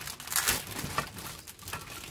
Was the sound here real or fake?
real